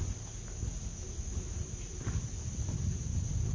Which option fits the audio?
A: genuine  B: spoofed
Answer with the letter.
A